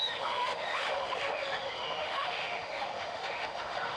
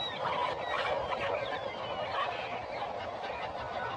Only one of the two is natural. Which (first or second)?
second